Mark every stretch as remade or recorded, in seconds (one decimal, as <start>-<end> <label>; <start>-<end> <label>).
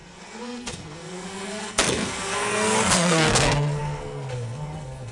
0.0-5.1 remade